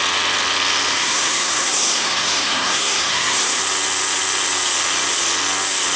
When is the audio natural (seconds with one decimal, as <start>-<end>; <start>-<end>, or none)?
0.0-0.9; 3.6-6.0